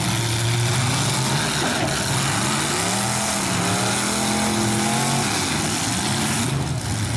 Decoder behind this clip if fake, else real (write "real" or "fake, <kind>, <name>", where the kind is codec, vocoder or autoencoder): real